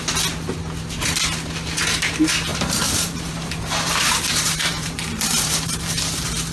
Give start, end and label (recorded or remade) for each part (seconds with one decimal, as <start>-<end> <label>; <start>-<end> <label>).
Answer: 0.0-2.5 recorded; 2.5-5.8 remade; 5.8-6.5 recorded